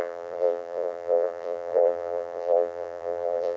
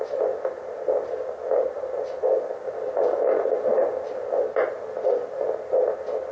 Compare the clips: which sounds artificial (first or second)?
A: first